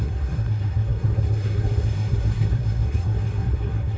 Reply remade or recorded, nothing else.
remade